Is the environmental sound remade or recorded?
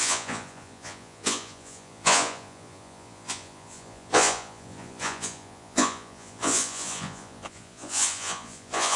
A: remade